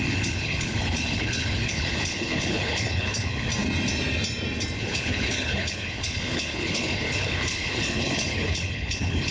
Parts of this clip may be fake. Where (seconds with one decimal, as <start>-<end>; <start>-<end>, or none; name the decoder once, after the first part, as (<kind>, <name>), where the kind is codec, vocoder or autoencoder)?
0.0-3.5 (codec, HILCodec); 4.8-9.3